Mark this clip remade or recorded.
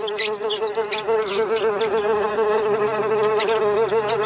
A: recorded